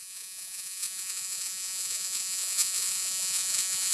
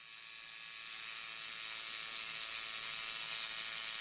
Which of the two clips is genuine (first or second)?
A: second